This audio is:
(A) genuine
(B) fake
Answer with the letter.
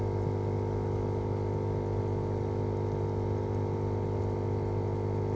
A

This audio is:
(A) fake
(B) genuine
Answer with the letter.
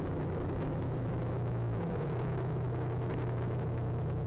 A